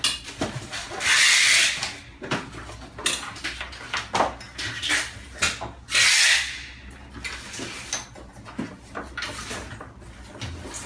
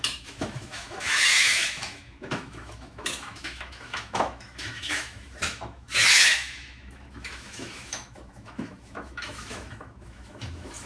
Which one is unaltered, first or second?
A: first